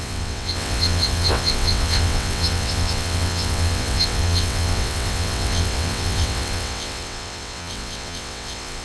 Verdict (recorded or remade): remade